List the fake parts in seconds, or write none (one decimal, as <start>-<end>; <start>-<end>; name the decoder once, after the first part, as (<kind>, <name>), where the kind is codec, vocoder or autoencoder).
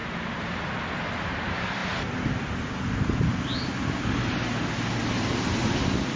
0.0-0.6 (vocoder, BigVGAN v2); 5.0-5.6